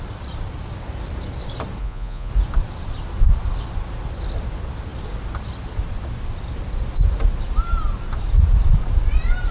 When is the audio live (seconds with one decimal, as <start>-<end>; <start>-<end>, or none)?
0.0-1.8; 2.3-9.5